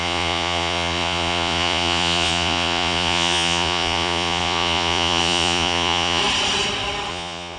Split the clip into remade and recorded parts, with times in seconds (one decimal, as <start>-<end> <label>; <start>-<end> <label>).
0.0-6.2 remade; 6.2-7.1 recorded; 7.1-7.6 remade